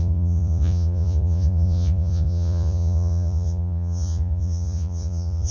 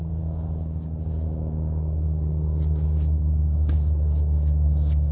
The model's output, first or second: first